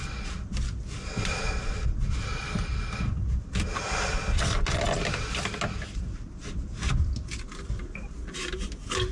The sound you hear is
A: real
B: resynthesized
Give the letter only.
A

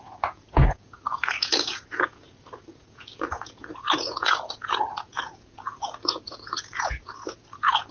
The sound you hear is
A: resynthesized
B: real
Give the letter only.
A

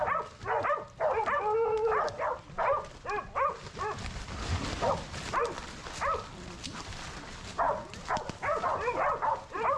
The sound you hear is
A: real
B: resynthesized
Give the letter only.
A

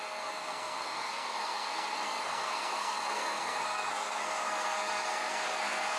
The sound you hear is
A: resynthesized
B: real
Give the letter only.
A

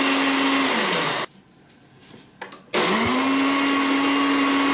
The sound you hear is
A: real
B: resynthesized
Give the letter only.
A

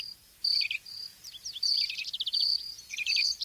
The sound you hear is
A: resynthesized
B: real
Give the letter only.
B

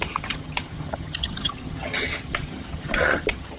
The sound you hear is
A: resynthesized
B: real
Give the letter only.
A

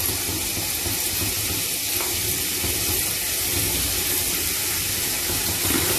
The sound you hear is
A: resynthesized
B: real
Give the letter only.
B